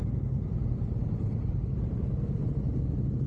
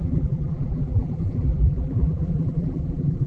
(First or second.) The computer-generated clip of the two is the second